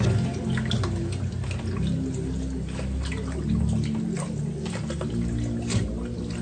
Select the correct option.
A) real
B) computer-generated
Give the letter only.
A